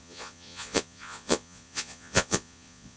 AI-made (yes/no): yes